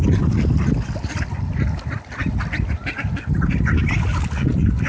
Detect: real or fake real